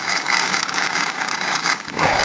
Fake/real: fake